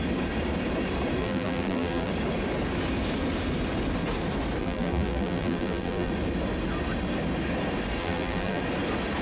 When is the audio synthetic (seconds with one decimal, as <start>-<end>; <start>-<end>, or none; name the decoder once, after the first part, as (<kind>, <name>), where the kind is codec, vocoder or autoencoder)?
1.2-2.1 (vocoder, BigVGAN v2); 4.6-6.1; 8.0-8.6